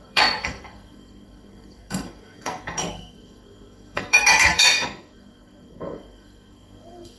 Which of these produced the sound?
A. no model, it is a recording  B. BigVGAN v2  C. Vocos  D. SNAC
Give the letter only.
D